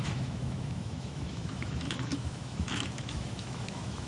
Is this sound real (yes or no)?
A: no